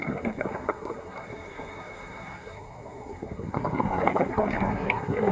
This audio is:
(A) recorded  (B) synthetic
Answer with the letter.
B